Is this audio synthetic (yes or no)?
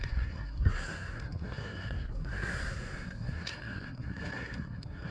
yes